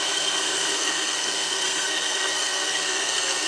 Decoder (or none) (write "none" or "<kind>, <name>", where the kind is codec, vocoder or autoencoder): codec, SNAC